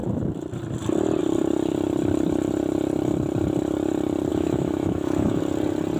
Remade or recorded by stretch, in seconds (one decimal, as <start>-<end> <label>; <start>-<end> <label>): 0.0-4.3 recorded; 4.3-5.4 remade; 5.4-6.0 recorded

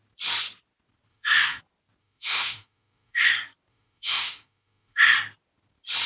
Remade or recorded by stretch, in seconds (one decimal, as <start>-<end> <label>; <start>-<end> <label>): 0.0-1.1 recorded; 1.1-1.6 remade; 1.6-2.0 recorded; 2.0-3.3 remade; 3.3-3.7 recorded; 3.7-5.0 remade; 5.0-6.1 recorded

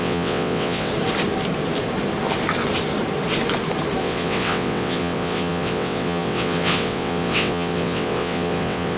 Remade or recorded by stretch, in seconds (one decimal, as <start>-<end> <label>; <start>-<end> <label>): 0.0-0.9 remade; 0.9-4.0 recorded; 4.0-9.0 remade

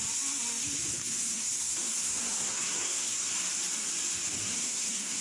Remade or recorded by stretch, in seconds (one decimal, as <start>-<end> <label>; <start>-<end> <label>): 0.0-1.0 recorded; 1.0-3.3 remade; 3.3-4.4 recorded; 4.4-5.2 remade